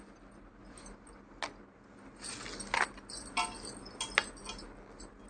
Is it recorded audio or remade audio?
recorded